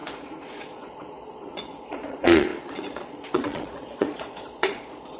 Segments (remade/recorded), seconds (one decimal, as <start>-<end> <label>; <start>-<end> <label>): 0.0-5.2 remade